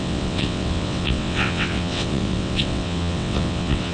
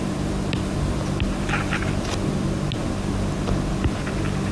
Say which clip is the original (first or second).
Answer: second